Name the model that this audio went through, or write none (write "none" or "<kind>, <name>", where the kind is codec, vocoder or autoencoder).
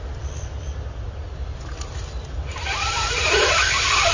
none